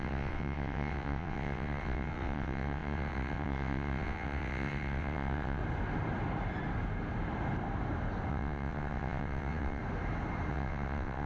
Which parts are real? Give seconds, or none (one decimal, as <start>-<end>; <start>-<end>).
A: 5.6-8.3; 9.8-10.5